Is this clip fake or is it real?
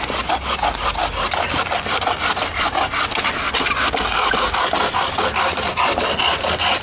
real